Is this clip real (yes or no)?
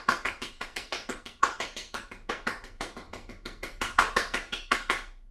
no